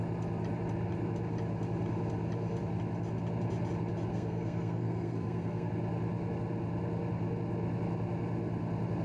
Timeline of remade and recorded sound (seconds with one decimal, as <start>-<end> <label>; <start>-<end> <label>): 0.0-4.1 recorded; 4.1-5.7 remade; 5.7-9.0 recorded